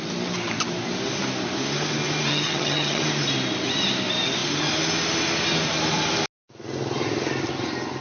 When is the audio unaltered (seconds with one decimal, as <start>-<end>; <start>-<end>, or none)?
0.0-2.3; 3.0-8.0